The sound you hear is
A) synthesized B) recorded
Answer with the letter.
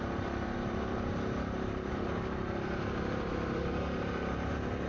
B